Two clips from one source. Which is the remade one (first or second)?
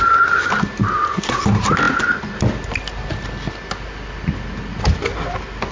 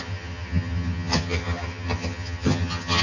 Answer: second